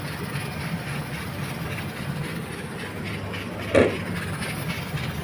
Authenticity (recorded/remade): recorded